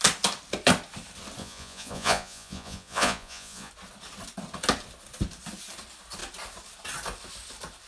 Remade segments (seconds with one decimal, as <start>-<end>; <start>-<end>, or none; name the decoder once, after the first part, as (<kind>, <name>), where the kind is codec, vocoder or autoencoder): 1.4-3.7 (vocoder, Vocos)